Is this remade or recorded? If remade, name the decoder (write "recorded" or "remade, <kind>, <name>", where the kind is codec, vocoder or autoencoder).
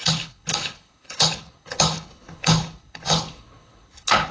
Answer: remade, codec, HILCodec